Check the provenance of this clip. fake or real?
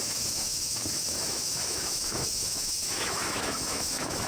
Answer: fake